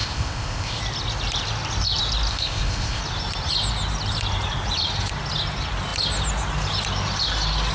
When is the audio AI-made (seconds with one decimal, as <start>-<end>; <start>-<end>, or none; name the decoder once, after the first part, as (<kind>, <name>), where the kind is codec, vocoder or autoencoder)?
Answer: 0.0-0.8 (codec, ZipCodec); 2.3-3.0